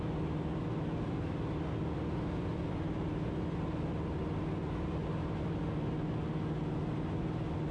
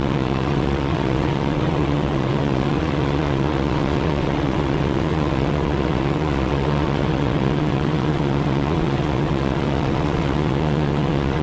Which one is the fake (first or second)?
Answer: second